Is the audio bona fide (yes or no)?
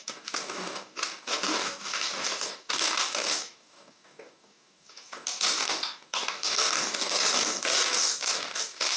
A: no